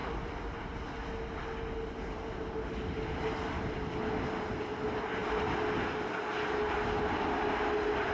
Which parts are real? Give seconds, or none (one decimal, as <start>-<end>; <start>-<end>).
0.0-8.1